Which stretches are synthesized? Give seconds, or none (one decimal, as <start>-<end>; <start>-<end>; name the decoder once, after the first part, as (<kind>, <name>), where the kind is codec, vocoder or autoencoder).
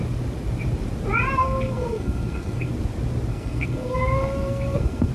1.4-2.7 (codec, SNAC); 3.3-5.1